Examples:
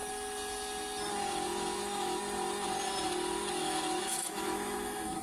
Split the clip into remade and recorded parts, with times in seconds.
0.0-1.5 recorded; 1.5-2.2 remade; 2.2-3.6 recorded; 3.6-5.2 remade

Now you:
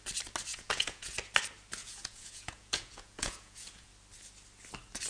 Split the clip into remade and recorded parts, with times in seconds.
0.0-0.5 recorded; 0.5-1.1 remade; 1.1-1.8 recorded; 1.8-3.9 remade; 3.9-5.1 recorded

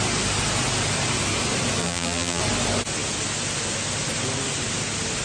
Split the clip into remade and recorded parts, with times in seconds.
0.0-1.8 recorded; 1.8-2.4 remade; 2.4-5.2 recorded